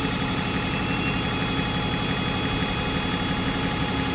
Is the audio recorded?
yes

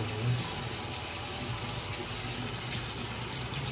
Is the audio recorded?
yes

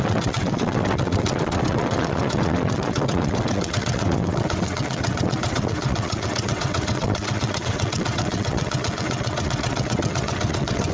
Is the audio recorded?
no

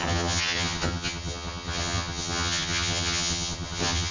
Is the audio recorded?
no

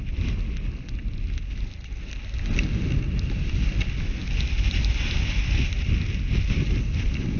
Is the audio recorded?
yes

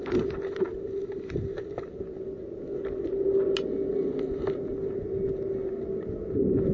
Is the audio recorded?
yes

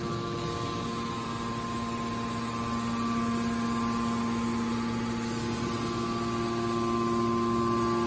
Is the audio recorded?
yes